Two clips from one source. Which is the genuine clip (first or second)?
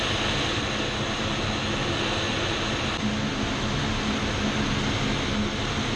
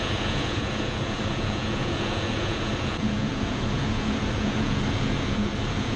first